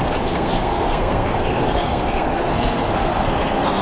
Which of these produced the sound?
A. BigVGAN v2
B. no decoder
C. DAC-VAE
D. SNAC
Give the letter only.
D